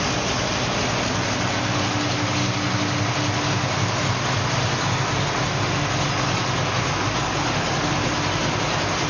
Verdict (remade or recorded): recorded